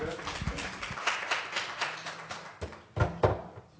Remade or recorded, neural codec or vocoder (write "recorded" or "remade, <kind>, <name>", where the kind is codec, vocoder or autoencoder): recorded